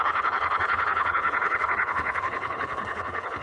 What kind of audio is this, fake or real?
fake